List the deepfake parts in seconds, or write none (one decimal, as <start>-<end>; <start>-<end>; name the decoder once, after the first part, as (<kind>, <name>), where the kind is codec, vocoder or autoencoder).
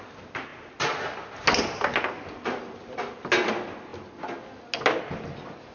none